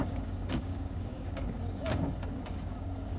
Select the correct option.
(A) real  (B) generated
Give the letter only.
B